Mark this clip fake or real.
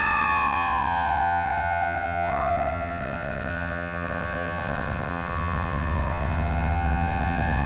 fake